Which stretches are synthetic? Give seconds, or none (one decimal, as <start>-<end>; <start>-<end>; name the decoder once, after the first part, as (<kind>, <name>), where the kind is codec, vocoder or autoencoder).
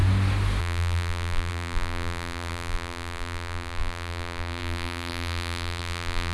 0.6-6.3 (vocoder, BigVGAN v2)